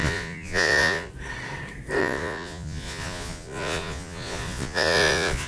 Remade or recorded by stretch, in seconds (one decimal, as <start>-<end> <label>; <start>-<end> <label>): 0.0-1.1 remade; 1.1-2.0 recorded; 2.0-5.5 remade